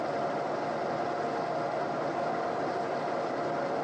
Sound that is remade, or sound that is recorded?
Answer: recorded